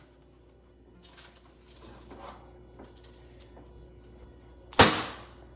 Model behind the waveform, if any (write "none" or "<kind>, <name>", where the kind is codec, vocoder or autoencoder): none